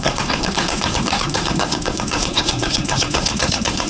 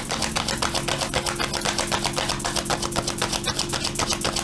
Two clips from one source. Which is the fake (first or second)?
first